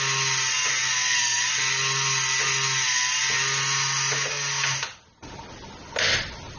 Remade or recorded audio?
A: recorded